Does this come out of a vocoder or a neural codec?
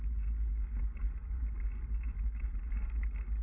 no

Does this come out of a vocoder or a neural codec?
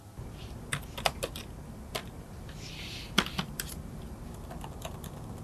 no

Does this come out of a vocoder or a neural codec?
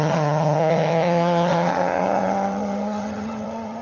yes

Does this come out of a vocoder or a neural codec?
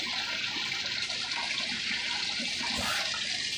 no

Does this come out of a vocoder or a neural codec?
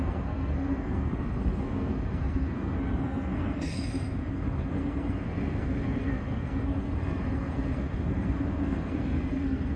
yes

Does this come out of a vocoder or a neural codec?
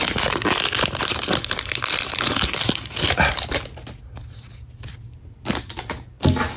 no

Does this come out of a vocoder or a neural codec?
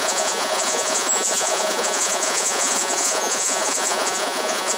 yes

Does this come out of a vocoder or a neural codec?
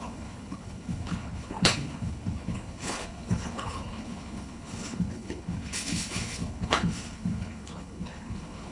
yes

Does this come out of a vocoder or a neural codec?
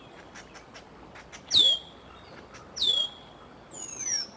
no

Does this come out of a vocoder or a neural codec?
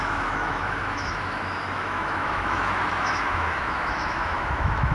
yes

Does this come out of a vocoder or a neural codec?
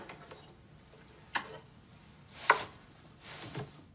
no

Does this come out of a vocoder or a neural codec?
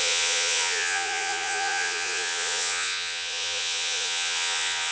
yes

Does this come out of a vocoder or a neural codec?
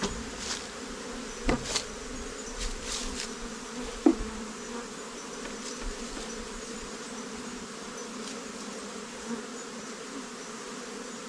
no